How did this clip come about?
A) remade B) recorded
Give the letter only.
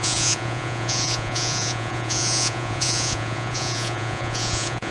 A